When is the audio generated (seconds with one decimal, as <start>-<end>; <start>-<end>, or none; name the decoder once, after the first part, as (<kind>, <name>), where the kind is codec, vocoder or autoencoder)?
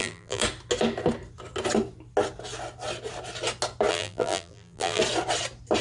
0.0-0.4 (vocoder, BigVGAN v2); 3.9-5.0